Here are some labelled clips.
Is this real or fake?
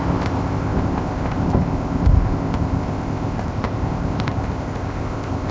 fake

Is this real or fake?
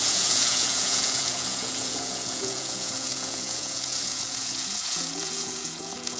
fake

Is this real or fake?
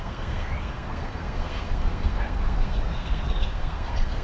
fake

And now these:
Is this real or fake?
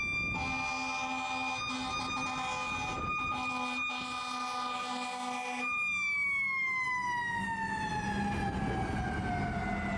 real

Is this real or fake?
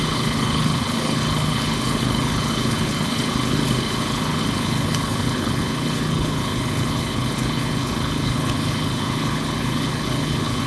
fake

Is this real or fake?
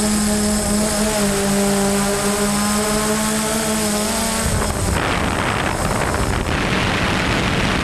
real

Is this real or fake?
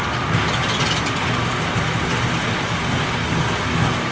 real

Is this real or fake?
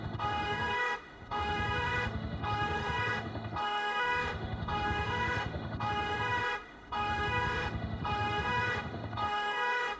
fake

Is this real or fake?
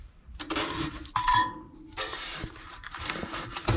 fake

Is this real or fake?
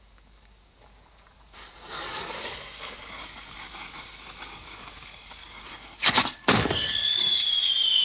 fake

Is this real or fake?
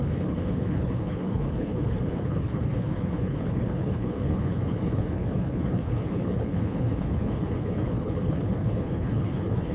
fake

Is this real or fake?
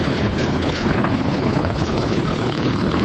fake